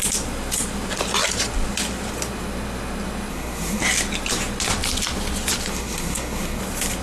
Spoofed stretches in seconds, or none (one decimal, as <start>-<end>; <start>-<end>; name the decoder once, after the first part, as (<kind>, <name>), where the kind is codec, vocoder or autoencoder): 3.3-3.8 (codec, SNAC); 5.7-6.6